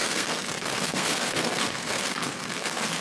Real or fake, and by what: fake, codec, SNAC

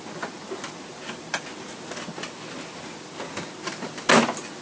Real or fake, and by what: real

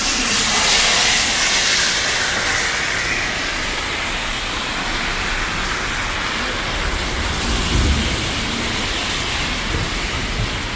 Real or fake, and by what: real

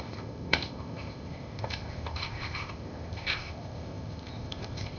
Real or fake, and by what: fake, codec, ZipCodec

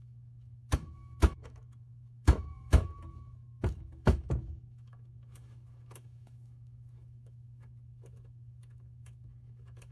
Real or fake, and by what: fake, autoencoder, DAC-VAE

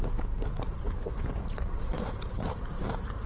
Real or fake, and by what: fake, vocoder, BigVGAN v2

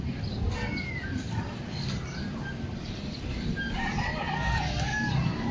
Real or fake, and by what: real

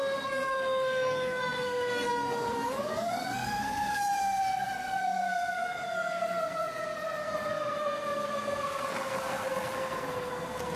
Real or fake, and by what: fake, codec, SNAC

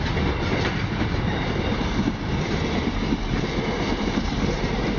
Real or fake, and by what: real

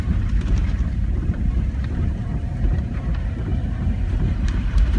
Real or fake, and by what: fake, vocoder, BigVGAN v2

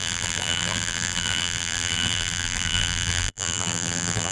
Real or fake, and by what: fake, vocoder, BigVGAN v2